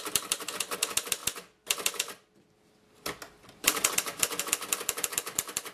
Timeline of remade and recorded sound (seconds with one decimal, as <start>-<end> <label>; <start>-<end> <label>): 0.0-5.7 recorded